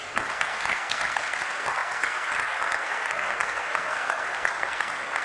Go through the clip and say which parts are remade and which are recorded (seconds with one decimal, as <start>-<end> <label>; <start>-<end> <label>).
0.0-5.2 remade